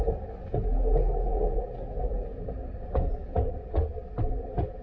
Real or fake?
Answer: real